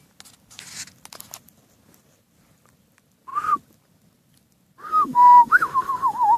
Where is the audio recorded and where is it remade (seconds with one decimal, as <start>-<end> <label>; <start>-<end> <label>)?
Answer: 0.0-4.9 recorded; 4.9-6.4 remade